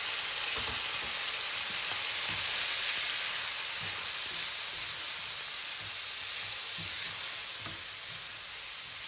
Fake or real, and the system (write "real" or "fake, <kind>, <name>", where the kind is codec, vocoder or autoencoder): real